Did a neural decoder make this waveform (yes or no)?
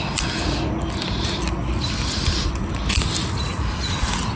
no